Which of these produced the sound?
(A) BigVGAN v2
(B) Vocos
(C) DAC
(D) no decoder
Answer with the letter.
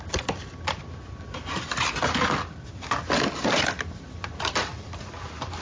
D